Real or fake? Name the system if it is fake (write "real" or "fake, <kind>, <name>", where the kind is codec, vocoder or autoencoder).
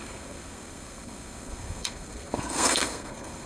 fake, codec, SNAC